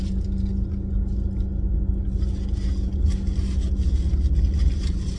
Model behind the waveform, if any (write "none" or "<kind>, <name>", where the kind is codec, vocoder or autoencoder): none